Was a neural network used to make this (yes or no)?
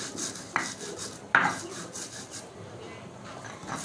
no